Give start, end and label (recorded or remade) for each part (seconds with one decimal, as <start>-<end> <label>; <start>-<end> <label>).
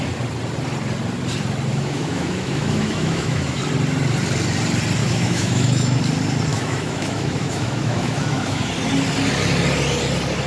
0.0-1.7 recorded; 1.7-3.6 remade; 3.6-5.0 recorded; 5.0-6.0 remade; 6.0-6.5 recorded; 6.5-8.7 remade; 8.7-10.5 recorded